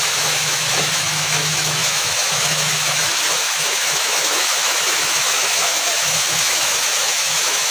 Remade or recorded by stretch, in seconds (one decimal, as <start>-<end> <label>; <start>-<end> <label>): 0.0-7.7 remade